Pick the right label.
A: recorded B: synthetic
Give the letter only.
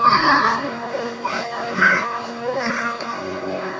B